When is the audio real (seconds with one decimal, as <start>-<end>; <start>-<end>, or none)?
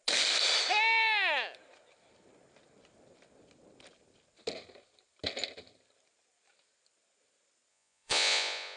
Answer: 0.0-7.7